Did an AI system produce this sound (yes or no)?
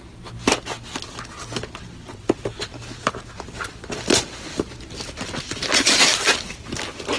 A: no